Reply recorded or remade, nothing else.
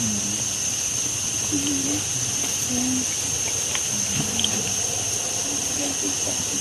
recorded